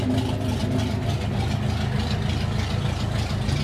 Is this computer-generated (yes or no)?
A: no